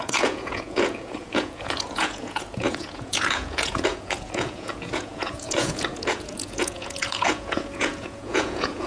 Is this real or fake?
fake